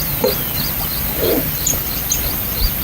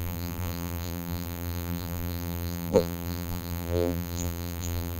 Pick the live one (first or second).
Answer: first